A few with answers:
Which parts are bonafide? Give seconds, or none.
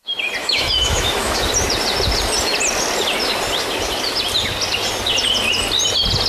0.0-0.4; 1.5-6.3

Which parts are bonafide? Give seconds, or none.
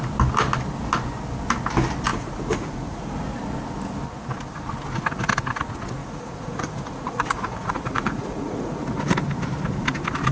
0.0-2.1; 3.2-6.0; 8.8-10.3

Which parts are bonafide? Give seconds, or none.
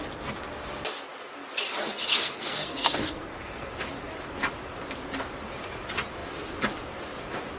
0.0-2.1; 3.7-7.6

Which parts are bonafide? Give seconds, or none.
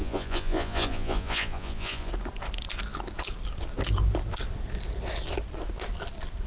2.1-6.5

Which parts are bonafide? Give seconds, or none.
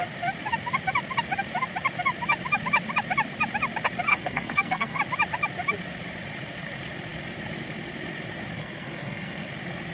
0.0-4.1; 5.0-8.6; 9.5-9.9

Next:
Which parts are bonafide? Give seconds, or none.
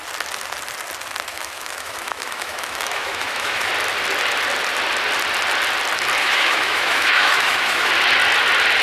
0.0-1.3; 3.7-6.2; 7.9-8.8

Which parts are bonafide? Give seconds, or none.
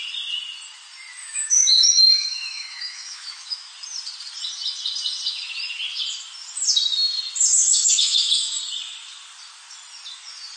0.0-1.2; 3.7-7.7; 8.6-10.6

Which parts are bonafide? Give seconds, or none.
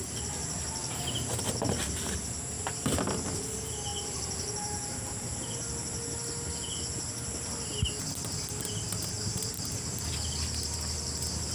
0.0-3.9; 5.3-11.5